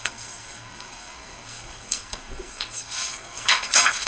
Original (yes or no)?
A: no